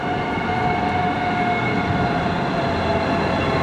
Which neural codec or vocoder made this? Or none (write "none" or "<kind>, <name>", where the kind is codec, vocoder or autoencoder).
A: none